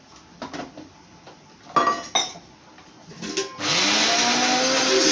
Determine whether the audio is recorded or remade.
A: recorded